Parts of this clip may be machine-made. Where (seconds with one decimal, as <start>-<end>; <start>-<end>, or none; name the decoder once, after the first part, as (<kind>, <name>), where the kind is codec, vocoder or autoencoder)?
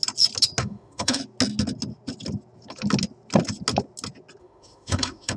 0.6-1.2 (autoencoder, DAC-VAE); 4.4-5.4